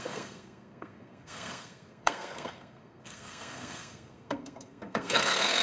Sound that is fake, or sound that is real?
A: fake